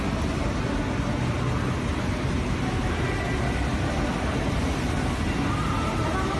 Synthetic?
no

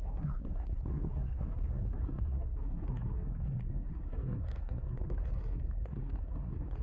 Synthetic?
yes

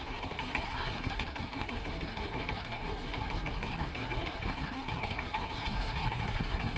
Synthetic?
yes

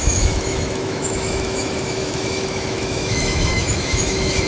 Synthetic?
yes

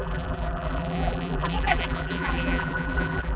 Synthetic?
yes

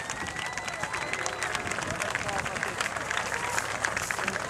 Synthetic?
no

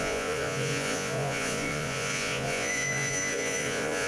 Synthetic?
yes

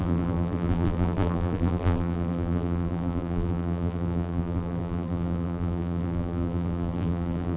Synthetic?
yes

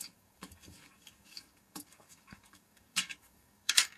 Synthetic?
yes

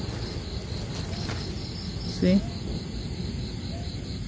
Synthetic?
no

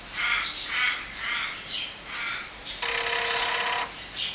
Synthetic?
no